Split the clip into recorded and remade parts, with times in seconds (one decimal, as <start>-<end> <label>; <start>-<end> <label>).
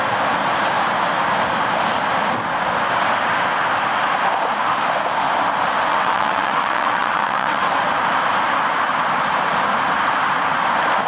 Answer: 0.0-5.9 recorded; 5.9-7.6 remade; 7.6-11.1 recorded